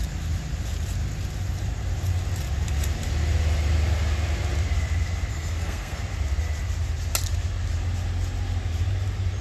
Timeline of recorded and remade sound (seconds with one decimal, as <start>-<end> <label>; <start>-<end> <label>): 0.0-5.3 recorded; 5.3-6.0 remade; 6.0-9.4 recorded